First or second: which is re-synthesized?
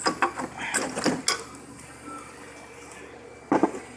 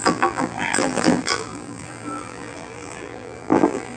second